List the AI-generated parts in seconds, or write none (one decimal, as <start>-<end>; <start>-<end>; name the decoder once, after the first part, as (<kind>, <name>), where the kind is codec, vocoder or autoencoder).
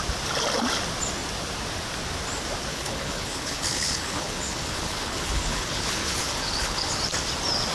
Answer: 2.7-7.0 (codec, HILCodec)